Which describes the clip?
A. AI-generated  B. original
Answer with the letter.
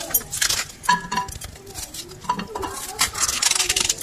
B